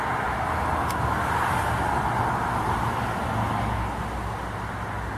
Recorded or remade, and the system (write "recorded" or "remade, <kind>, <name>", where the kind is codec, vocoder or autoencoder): recorded